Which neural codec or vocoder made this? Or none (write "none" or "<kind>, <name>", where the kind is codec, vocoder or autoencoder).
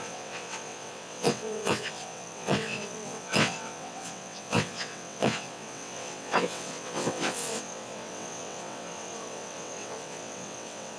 vocoder, WaveNeXt